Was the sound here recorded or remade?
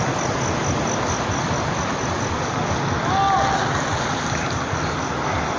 recorded